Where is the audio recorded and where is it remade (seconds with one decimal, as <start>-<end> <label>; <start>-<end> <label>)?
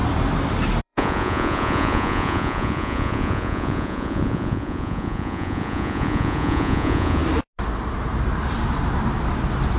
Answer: 0.0-0.8 recorded; 0.8-7.2 remade; 7.2-9.8 recorded